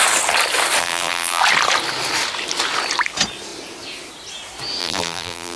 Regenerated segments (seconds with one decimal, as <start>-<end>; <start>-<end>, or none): 0.8-1.4; 4.8-5.6

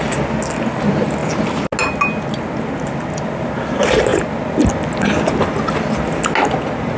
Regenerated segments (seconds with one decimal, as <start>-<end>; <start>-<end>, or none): none

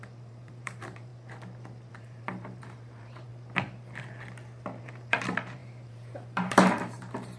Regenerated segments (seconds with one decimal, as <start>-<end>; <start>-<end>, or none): 0.0-1.1; 1.9-3.3; 4.8-7.4